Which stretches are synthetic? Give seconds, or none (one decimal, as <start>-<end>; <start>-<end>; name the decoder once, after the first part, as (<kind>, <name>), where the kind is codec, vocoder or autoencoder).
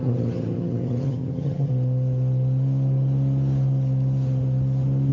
0.0-1.7 (vocoder, HiFi-GAN)